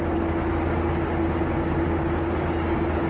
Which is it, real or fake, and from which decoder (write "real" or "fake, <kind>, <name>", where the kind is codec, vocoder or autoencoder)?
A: real